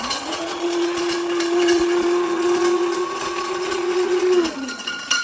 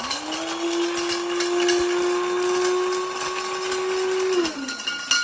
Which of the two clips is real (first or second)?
second